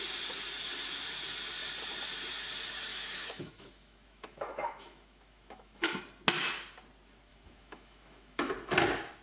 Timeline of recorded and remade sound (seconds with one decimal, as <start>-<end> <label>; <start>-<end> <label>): 0.0-2.9 recorded; 2.9-6.0 remade; 6.0-7.3 recorded; 7.3-8.5 remade; 8.5-9.2 recorded

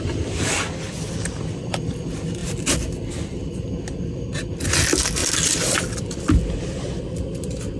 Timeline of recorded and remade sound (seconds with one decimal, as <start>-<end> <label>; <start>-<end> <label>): 0.0-7.8 recorded

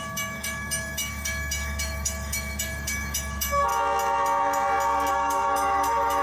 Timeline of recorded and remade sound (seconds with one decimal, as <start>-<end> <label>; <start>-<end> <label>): 0.0-3.7 remade; 3.7-5.1 recorded; 5.1-6.2 remade